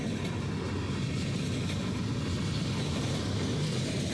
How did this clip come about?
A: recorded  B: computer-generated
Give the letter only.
A